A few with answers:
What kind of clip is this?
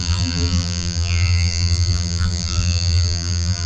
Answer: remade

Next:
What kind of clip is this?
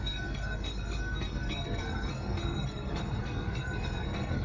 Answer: remade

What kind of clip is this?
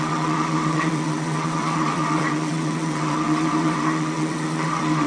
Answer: remade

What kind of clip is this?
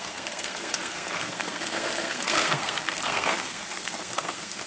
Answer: remade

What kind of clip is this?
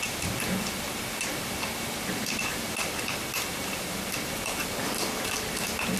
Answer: recorded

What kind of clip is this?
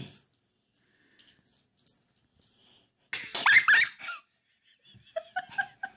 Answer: recorded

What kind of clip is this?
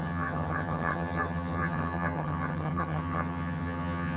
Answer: remade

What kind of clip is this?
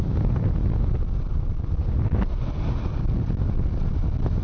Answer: recorded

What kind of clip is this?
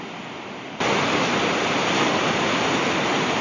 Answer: recorded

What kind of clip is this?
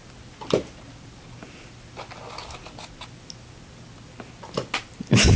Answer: recorded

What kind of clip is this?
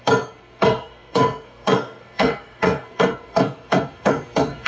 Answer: remade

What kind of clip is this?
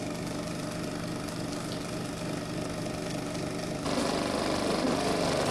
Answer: recorded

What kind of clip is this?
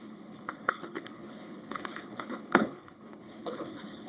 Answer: remade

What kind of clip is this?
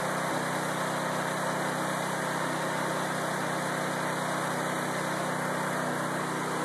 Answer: recorded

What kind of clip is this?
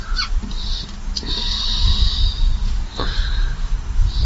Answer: remade